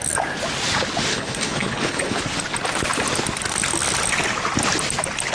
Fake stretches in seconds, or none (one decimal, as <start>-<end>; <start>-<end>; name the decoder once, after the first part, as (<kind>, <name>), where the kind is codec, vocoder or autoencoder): 1.1-2.2 (codec, HILCodec)